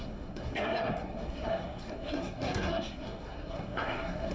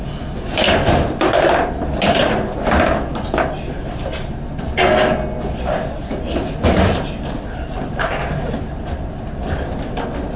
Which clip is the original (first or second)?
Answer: second